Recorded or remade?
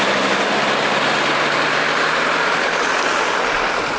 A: recorded